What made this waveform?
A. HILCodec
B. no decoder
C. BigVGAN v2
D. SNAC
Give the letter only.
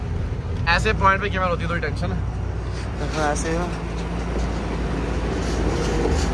B